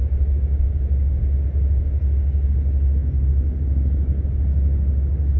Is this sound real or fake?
real